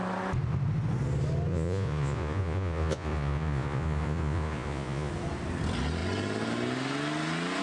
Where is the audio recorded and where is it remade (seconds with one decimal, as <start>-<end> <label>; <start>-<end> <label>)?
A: 0.0-1.5 recorded; 1.5-5.1 remade; 5.1-7.6 recorded

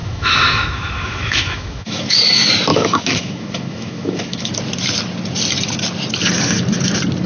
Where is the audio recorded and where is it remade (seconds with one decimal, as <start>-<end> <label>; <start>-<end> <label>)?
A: 0.0-2.2 remade; 2.2-2.7 recorded; 2.7-4.5 remade; 4.5-7.3 recorded

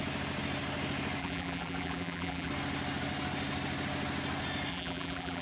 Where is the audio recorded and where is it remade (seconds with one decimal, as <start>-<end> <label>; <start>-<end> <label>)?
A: 0.0-1.2 recorded; 1.2-2.5 remade; 2.5-4.7 recorded; 4.7-5.4 remade

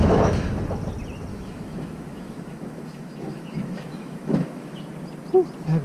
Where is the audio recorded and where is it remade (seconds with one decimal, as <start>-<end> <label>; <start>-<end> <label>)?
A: 0.0-0.6 remade; 0.6-1.3 recorded; 1.3-4.8 remade; 4.8-5.8 recorded